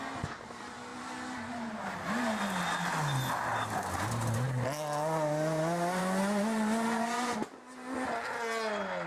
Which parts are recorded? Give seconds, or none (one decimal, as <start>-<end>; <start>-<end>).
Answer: 0.0-9.1